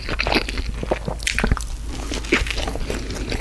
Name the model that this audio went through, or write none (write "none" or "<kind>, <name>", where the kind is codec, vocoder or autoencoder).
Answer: none